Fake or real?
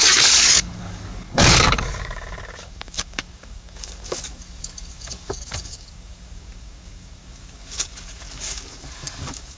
fake